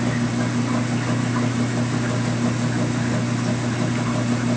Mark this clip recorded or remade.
recorded